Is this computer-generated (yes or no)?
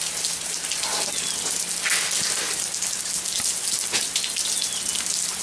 no